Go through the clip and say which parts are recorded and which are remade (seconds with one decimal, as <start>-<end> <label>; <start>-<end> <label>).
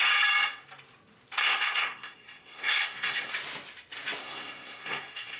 0.0-1.4 recorded; 1.4-3.3 remade; 3.3-4.2 recorded; 4.2-5.4 remade